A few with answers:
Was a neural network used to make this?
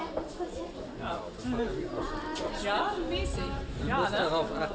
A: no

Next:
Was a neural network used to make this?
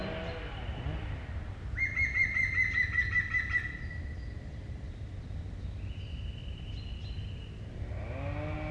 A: no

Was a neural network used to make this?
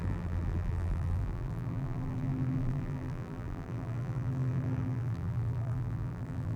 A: yes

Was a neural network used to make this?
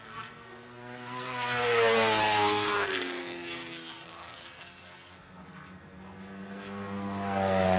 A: yes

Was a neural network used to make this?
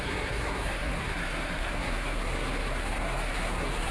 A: yes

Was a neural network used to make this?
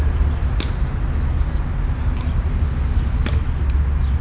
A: no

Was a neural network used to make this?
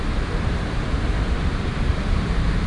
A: yes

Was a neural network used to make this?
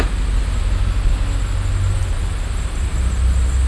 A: no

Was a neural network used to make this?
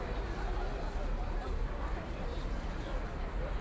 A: no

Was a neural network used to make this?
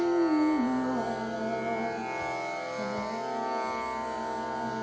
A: no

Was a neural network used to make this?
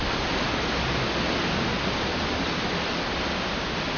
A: no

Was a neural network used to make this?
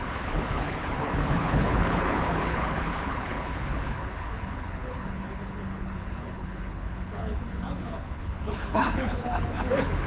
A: yes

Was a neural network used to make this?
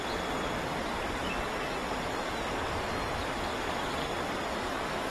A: no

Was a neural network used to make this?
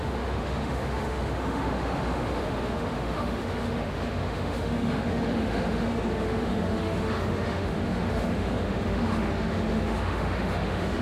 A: yes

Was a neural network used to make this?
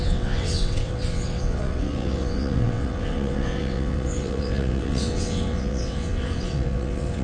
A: yes